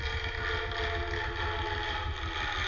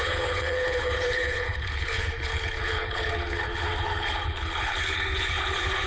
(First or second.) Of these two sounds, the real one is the first